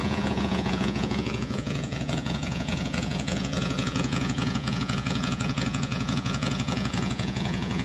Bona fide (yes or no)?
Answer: no